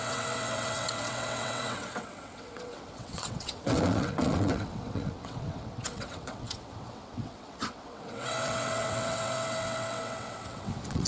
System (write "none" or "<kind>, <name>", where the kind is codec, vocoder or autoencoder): vocoder, WaveNeXt